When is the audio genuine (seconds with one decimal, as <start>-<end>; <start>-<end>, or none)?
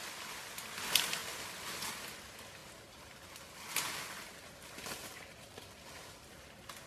0.0-6.9